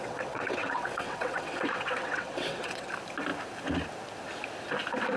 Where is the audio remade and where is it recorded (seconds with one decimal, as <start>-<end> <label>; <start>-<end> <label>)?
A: 0.0-2.9 remade; 2.9-5.2 recorded